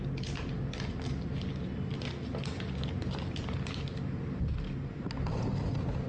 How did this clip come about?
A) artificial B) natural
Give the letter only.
B